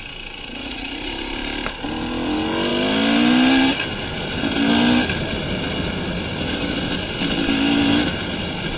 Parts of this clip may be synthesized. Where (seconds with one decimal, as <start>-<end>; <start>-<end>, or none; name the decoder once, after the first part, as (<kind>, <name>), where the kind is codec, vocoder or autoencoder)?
0.6-1.1 (vocoder, Vocos)